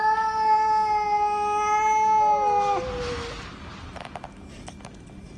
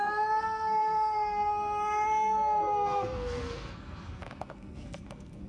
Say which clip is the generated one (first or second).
second